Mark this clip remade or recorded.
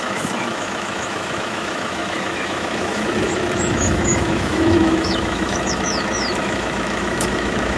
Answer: remade